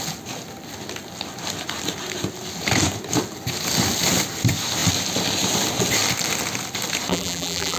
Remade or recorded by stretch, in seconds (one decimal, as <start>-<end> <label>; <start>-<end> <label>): 0.0-7.1 recorded; 7.1-7.8 remade